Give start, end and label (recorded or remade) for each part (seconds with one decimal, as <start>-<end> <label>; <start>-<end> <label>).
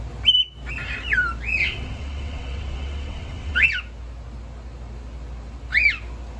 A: 0.0-1.6 recorded; 1.6-3.7 remade; 3.7-6.4 recorded